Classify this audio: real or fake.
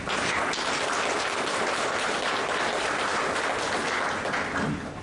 real